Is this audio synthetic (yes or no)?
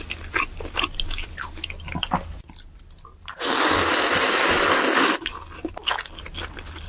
no